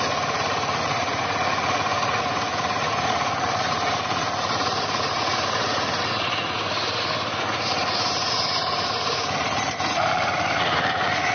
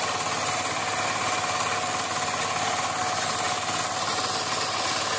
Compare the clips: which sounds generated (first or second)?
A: first